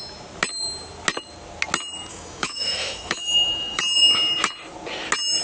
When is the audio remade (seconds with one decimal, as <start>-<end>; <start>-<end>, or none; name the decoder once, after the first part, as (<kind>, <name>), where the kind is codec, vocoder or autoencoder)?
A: 2.1-3.8 (autoencoder, DAC-VAE)